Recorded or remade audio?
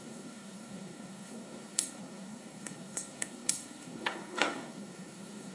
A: remade